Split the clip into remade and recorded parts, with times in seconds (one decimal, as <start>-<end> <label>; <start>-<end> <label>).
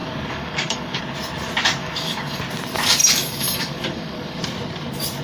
0.0-1.0 remade; 1.0-1.8 recorded; 1.8-2.4 remade; 2.4-3.0 recorded; 3.0-4.4 remade; 4.4-5.2 recorded